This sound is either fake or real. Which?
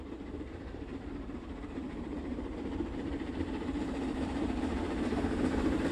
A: fake